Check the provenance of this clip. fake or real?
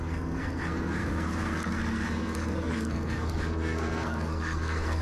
fake